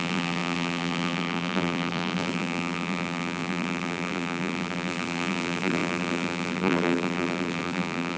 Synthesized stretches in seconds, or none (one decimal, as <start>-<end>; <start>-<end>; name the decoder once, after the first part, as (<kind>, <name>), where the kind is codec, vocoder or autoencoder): 0.0-8.2 (vocoder, BigVGAN v2)